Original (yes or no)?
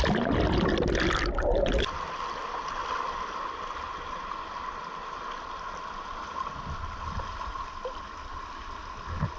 yes